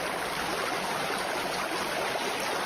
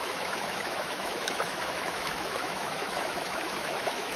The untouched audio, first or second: first